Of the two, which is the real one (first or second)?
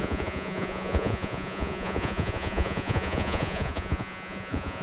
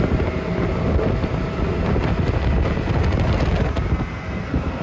second